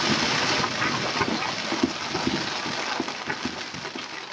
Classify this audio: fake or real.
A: real